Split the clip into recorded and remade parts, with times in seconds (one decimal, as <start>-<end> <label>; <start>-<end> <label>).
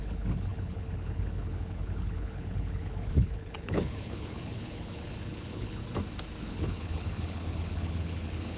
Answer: 0.0-5.8 remade; 5.8-6.4 recorded; 6.4-8.6 remade